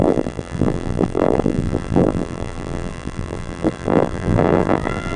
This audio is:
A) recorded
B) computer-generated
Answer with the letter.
B